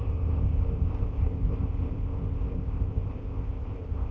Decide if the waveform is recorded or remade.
remade